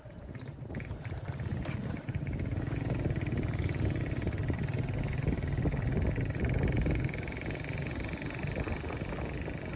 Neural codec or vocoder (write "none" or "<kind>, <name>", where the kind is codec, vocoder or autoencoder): none